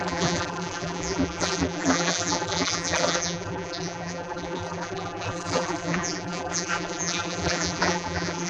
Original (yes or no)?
no